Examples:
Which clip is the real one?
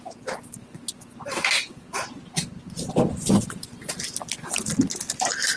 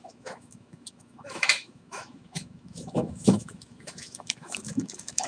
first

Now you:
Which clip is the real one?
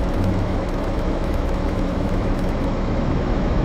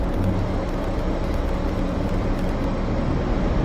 second